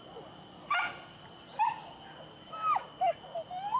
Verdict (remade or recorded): recorded